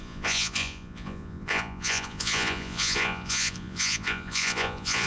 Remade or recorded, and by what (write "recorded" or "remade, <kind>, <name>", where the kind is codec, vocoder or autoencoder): remade, vocoder, Vocos